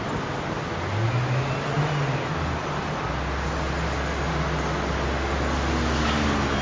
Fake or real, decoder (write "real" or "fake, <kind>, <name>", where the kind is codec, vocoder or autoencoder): real